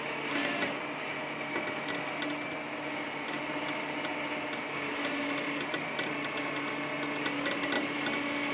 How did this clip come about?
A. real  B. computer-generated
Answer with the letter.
A